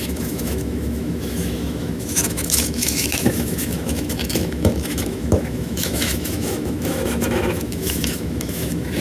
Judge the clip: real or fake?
fake